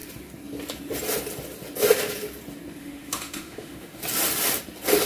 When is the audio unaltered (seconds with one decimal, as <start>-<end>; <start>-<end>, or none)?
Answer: 0.0-2.8; 4.0-5.1